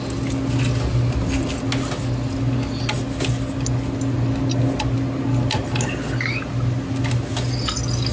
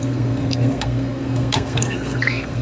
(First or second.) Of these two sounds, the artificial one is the second